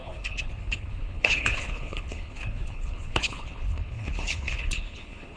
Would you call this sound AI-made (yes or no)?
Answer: yes